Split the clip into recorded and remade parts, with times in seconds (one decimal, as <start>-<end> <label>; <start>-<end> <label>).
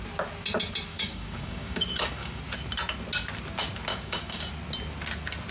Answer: 0.0-0.9 recorded; 0.9-2.4 remade; 2.4-3.9 recorded; 3.9-4.5 remade; 4.5-5.5 recorded